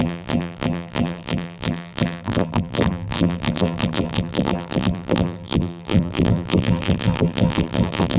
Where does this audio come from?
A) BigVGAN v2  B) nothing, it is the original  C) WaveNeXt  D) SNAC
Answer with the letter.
A